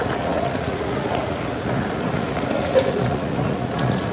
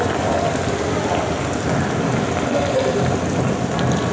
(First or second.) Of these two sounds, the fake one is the first